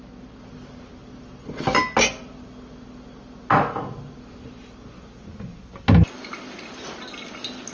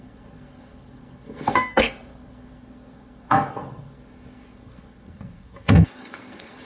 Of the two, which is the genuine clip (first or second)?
first